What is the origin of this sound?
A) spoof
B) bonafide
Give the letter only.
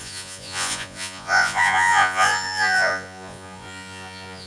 A